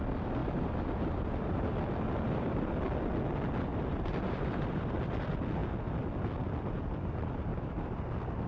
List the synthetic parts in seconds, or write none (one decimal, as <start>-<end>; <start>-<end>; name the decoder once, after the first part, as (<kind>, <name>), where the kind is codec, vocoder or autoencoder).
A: 0.4-2.7 (vocoder, BigVGAN v2); 3.7-4.9; 7.5-8.0